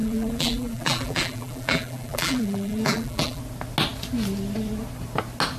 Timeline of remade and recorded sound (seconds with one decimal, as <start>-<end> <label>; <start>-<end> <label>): 0.0-3.4 remade; 3.4-5.6 recorded